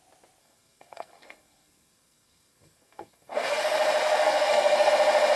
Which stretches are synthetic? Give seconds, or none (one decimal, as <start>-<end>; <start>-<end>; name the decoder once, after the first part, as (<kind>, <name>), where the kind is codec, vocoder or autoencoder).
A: 0.4-3.6 (codec, SNAC); 4.0-4.9